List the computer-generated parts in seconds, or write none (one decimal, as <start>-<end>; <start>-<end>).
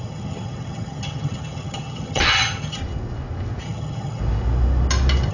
0.0-2.8; 3.6-4.2